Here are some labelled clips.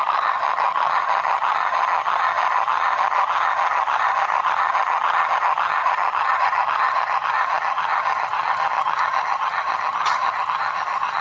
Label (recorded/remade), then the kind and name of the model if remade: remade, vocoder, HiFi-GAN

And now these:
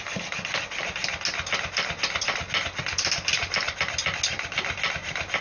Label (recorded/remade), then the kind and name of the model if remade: recorded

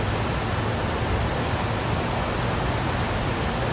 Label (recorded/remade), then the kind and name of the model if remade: recorded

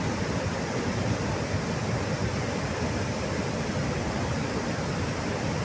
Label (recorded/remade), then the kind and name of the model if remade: recorded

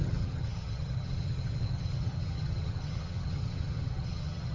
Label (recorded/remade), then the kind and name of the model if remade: remade, vocoder, HiFi-GAN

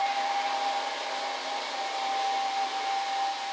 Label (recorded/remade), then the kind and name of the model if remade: recorded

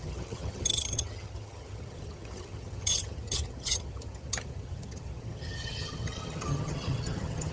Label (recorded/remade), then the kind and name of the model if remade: remade, vocoder, HiFi-GAN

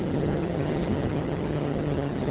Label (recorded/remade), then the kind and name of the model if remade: remade, vocoder, HiFi-GAN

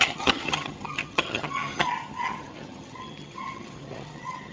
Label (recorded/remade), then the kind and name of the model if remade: remade, vocoder, HiFi-GAN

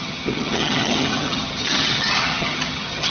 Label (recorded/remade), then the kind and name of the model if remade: remade, vocoder, HiFi-GAN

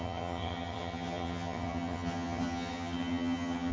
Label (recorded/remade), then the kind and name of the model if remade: remade, vocoder, HiFi-GAN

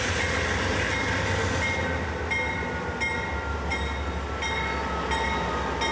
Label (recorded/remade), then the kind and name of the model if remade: recorded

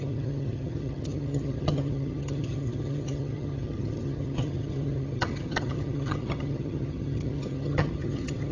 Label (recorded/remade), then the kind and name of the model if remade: remade, vocoder, HiFi-GAN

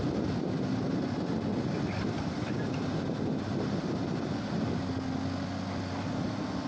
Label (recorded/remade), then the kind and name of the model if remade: recorded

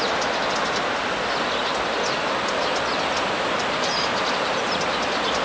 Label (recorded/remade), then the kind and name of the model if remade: recorded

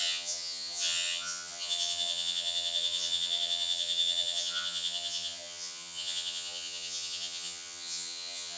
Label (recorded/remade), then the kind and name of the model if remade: remade, vocoder, HiFi-GAN